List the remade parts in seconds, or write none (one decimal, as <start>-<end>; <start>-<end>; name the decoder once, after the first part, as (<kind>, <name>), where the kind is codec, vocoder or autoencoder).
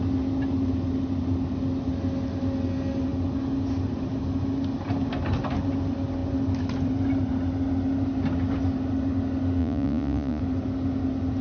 9.6-10.4 (vocoder, Vocos)